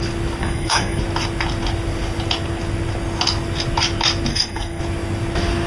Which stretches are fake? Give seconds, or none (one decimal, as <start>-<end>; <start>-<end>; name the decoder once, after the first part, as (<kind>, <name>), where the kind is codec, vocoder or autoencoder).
0.4-1.0 (codec, SNAC); 4.3-4.8